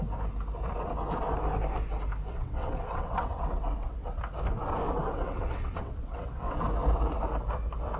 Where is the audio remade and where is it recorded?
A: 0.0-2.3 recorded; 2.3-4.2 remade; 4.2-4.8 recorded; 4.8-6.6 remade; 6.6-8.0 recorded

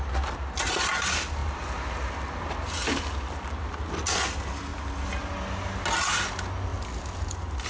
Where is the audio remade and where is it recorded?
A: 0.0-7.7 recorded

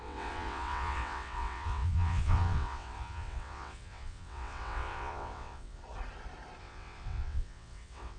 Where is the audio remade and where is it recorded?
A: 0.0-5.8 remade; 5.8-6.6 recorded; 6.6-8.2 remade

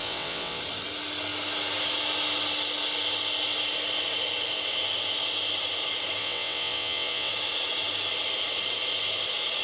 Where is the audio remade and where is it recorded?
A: 0.0-0.6 remade; 0.6-6.2 recorded; 6.2-7.3 remade; 7.3-9.6 recorded